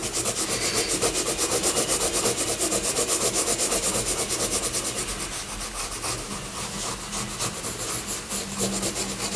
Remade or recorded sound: recorded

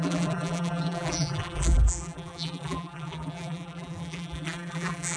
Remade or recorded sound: remade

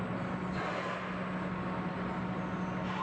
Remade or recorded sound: recorded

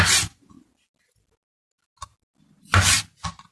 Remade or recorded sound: recorded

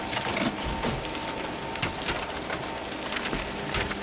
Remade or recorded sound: recorded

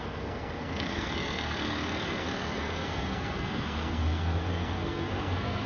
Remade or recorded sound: remade